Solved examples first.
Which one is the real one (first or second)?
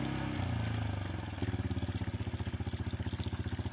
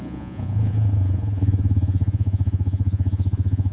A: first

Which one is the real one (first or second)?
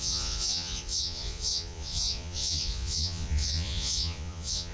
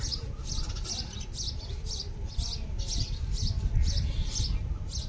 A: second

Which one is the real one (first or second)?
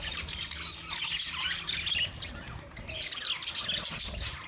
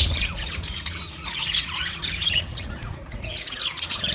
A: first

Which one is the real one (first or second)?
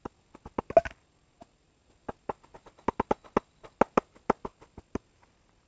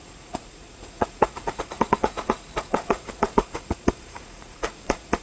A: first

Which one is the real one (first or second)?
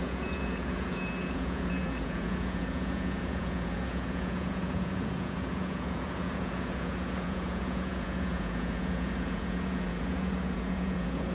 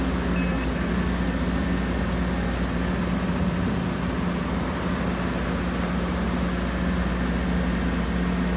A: second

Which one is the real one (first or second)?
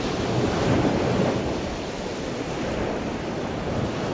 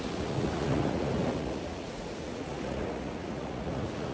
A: first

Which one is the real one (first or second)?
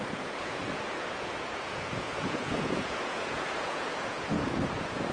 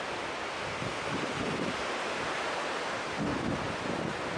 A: second